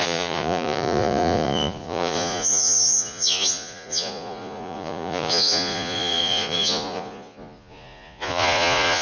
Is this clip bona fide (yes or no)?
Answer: no